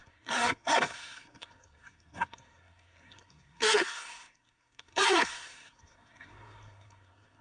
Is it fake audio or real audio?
fake